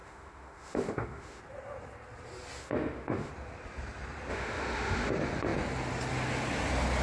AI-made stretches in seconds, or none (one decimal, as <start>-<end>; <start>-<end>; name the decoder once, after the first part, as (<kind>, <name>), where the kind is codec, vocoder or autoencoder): 0.0-1.4 (autoencoder, DAC-VAE); 2.6-3.3; 4.3-5.1